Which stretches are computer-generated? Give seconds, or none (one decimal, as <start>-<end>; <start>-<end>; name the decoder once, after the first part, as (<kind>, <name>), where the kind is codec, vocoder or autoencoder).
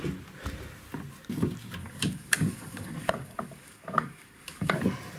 1.8-4.8 (codec, DAC)